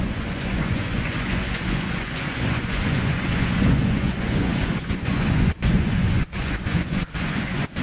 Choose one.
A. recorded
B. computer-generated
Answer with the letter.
B